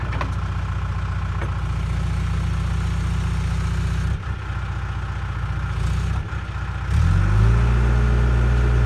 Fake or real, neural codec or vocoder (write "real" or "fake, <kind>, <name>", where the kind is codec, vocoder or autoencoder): real